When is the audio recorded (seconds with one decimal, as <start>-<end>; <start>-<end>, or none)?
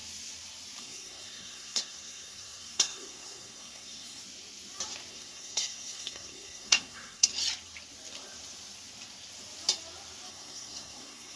0.0-0.8; 4.2-5.1; 7.3-10.3